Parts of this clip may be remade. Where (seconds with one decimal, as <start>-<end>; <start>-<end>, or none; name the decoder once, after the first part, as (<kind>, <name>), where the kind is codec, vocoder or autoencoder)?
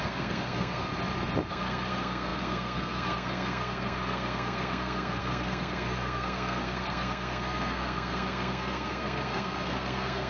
0.0-0.9 (codec, SNAC); 1.5-10.3